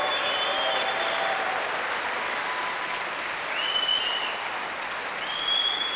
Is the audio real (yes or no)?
yes